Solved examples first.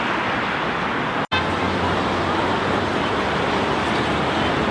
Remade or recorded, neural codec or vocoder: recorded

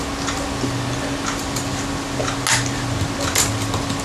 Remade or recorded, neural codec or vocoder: recorded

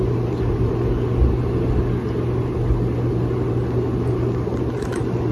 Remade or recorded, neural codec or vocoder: recorded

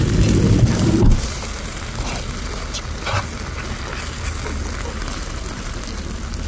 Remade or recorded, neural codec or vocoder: recorded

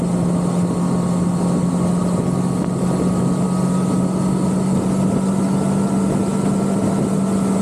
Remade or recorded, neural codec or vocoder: recorded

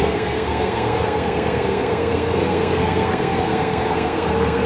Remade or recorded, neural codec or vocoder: remade, codec, SNAC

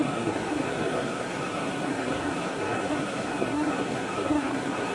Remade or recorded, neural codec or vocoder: remade, codec, SNAC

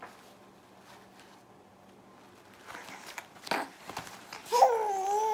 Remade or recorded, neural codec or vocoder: recorded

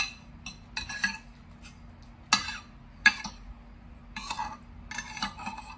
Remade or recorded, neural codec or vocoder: recorded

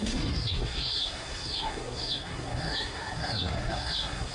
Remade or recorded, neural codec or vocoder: remade, codec, SNAC